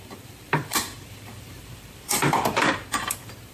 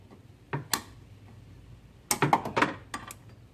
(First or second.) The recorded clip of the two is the second